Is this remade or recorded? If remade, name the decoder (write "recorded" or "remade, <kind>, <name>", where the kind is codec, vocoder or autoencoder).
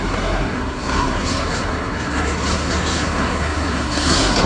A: remade, codec, SNAC